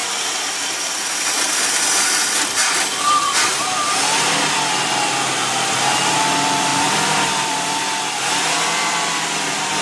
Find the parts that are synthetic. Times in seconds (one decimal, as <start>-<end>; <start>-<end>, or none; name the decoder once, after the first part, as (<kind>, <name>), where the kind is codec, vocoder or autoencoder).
6.7-7.8 (vocoder, BigVGAN v2)